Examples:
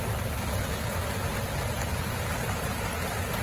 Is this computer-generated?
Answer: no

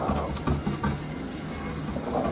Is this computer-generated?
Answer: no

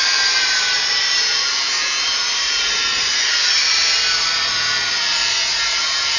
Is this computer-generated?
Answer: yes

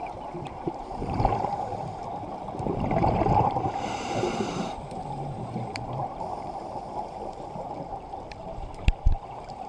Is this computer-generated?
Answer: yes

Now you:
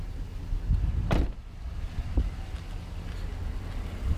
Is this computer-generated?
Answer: no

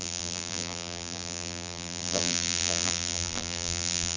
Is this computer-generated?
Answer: yes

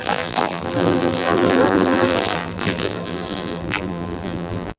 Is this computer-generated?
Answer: yes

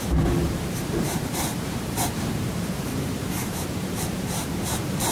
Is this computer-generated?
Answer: yes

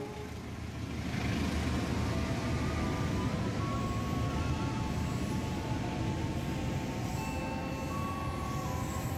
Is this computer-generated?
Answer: no